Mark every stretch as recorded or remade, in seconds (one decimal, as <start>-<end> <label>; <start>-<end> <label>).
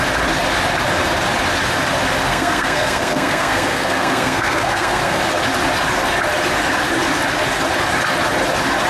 0.0-2.3 recorded; 2.3-5.2 remade; 5.2-8.9 recorded